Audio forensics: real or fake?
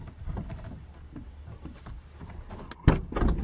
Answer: real